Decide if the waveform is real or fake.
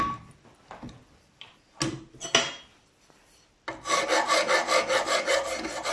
real